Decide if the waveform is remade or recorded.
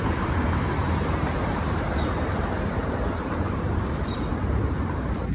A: remade